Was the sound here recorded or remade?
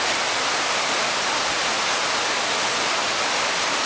recorded